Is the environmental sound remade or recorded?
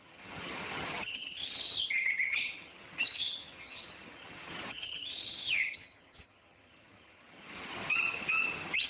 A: remade